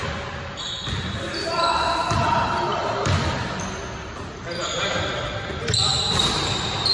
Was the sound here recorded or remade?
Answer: recorded